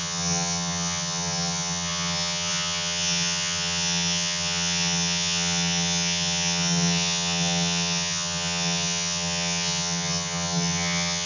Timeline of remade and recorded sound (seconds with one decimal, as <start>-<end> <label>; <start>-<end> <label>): 0.0-11.3 remade